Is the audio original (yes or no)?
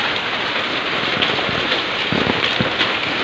yes